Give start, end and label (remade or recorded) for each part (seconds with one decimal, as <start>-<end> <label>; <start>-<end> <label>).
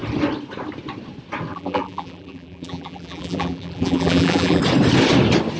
0.0-1.5 recorded; 1.5-4.6 remade; 4.6-5.6 recorded